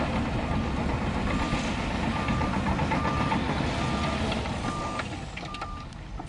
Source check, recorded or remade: recorded